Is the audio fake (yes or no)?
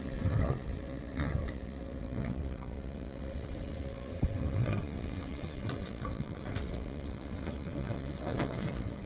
yes